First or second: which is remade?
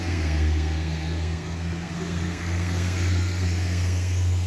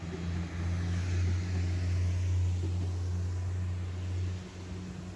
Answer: first